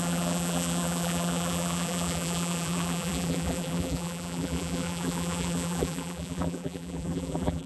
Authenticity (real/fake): fake